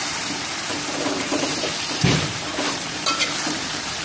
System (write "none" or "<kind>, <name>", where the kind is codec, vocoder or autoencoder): vocoder, BigVGAN v2